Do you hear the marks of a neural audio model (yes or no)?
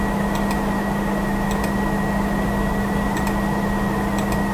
no